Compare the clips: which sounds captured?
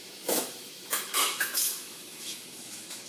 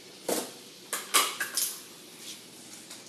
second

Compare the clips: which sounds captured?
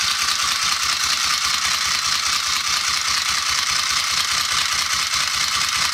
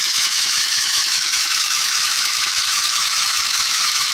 first